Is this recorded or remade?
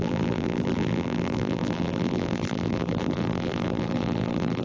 remade